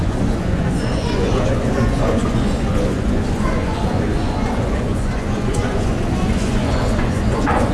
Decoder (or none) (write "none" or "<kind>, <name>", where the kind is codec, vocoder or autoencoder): vocoder, Vocos